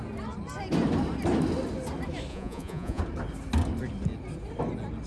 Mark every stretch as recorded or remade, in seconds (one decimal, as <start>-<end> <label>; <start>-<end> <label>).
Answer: 0.0-2.3 recorded; 2.3-3.0 remade; 3.0-5.1 recorded